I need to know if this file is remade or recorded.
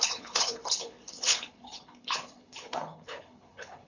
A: remade